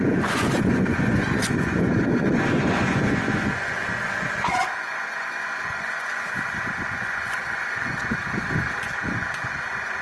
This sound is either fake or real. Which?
fake